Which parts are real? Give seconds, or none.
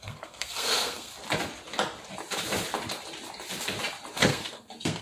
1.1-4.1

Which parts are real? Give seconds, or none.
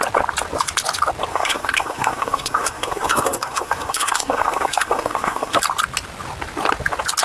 0.0-1.3; 5.6-7.2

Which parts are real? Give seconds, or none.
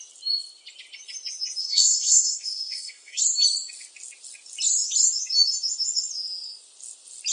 0.0-1.6; 3.2-7.3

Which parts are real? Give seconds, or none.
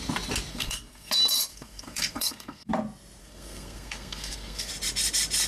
0.0-0.5; 1.1-1.5; 2.7-3.2; 4.7-5.5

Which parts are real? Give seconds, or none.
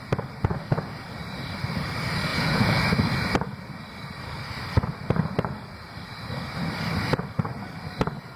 0.0-2.3; 2.8-8.4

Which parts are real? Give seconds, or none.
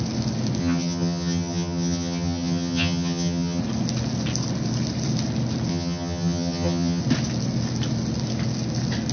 0.0-0.6; 3.6-5.7; 7.0-9.1